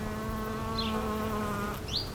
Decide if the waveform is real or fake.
real